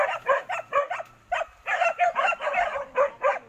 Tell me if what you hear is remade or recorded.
recorded